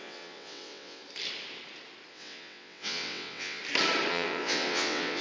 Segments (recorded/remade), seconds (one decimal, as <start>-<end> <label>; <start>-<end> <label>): 0.0-1.0 remade; 1.0-2.1 recorded; 2.1-3.6 remade; 3.6-4.1 recorded; 4.1-5.2 remade